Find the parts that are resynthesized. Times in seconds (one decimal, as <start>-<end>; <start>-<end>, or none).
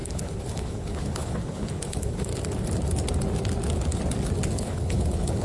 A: 0.0-2.3; 4.5-5.4